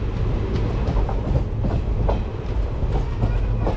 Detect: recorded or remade recorded